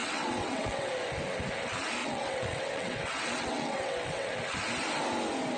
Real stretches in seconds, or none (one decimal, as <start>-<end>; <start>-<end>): 0.9-2.0; 4.3-5.6